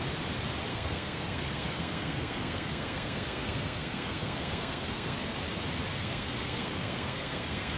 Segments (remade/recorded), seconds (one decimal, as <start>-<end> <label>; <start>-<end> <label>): 0.0-0.7 recorded; 0.7-5.4 remade; 5.4-5.9 recorded; 5.9-7.8 remade